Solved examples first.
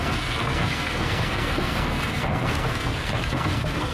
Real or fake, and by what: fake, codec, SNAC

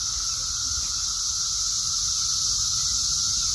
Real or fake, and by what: real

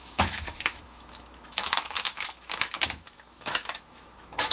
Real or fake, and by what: fake, autoencoder, DAC-VAE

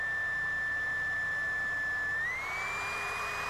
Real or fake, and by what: real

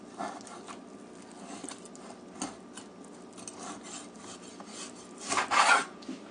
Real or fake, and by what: real